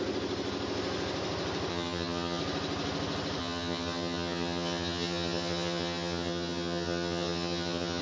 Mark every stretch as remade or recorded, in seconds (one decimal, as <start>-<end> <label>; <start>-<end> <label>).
0.0-1.7 recorded; 1.7-2.4 remade; 2.4-3.4 recorded; 3.4-8.0 remade